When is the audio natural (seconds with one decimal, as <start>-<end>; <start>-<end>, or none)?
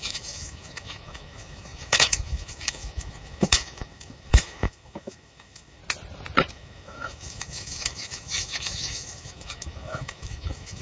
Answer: 5.8-6.5